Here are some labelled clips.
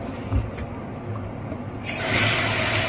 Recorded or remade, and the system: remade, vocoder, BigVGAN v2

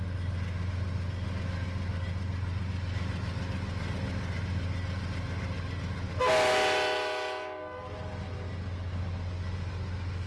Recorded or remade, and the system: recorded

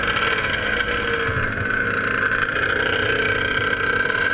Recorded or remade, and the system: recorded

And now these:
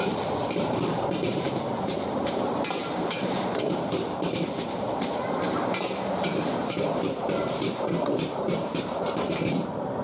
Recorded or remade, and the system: remade, vocoder, BigVGAN v2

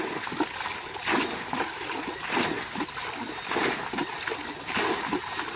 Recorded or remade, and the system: recorded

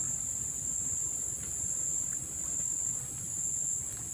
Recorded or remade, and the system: recorded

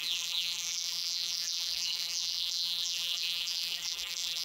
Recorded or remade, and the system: remade, vocoder, BigVGAN v2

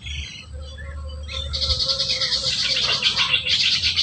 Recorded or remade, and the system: remade, vocoder, BigVGAN v2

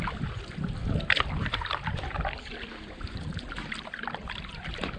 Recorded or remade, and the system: remade, vocoder, BigVGAN v2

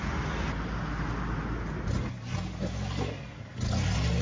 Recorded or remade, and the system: recorded